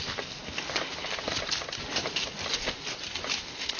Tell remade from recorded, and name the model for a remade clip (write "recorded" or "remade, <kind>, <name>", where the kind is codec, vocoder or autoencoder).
recorded